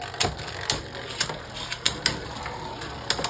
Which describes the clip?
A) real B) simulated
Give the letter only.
A